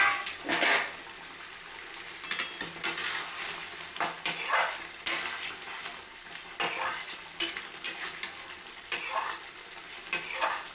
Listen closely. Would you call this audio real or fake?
real